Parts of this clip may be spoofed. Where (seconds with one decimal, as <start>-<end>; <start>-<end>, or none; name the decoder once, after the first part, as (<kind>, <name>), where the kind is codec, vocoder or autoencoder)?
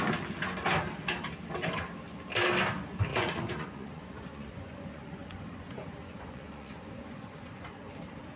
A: 3.1-7.7 (vocoder, Vocos)